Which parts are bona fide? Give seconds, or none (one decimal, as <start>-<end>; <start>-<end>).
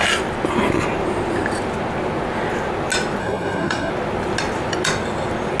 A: 0.0-3.2; 3.9-5.6